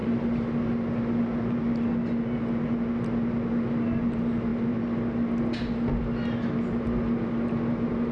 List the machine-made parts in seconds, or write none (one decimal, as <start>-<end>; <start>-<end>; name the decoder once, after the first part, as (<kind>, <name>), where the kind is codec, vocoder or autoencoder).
none